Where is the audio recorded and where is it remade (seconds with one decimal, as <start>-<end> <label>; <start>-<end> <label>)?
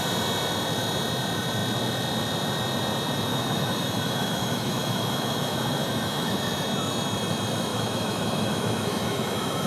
0.0-3.3 recorded; 3.3-6.4 remade; 6.4-7.7 recorded; 7.7-9.7 remade